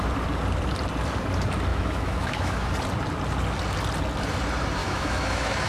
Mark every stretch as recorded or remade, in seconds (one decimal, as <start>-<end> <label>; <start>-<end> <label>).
0.0-1.7 recorded; 1.7-2.7 remade; 2.7-4.8 recorded; 4.8-5.7 remade